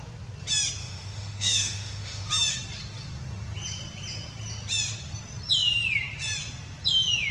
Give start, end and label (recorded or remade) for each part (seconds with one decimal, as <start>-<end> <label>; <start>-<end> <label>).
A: 0.0-0.8 recorded; 0.8-2.3 remade; 2.3-7.3 recorded